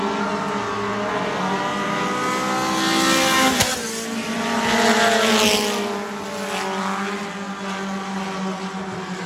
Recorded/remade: recorded